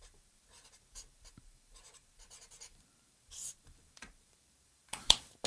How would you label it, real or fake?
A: fake